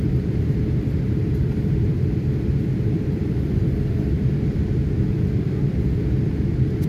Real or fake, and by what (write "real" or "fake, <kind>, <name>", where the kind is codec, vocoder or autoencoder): fake, vocoder, BigVGAN v2